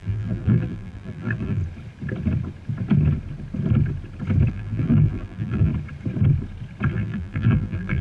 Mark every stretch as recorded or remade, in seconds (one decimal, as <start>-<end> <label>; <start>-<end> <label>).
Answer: 0.0-1.6 remade; 1.6-4.5 recorded; 4.5-5.7 remade; 5.7-6.9 recorded; 6.9-8.0 remade

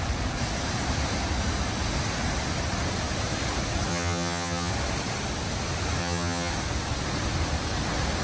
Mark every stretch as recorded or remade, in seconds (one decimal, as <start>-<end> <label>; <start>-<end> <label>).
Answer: 0.0-3.9 recorded; 3.9-4.7 remade; 4.7-6.0 recorded; 6.0-6.5 remade; 6.5-8.2 recorded

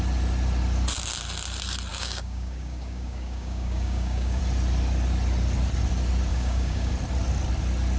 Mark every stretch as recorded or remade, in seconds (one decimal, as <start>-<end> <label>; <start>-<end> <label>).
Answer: 0.0-1.9 recorded; 1.9-4.4 remade; 4.4-6.3 recorded; 6.3-6.9 remade; 6.9-8.0 recorded

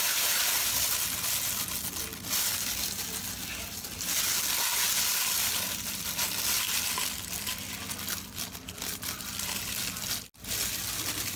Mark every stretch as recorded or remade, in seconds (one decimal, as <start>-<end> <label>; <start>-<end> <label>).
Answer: 0.0-11.4 recorded

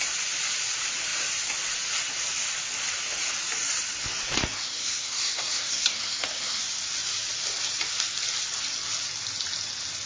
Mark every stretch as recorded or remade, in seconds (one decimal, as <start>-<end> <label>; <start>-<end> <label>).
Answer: 0.0-4.5 recorded; 4.5-6.6 remade; 6.6-10.1 recorded

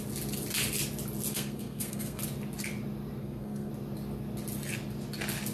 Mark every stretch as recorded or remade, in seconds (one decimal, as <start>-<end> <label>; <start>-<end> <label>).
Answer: 0.0-1.3 recorded; 1.3-2.2 remade; 2.2-3.2 recorded; 3.2-3.7 remade; 3.7-5.5 recorded